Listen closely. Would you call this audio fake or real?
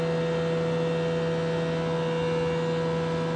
real